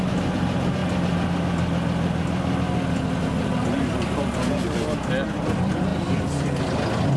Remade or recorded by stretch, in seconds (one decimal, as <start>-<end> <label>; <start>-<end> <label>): 0.0-7.2 recorded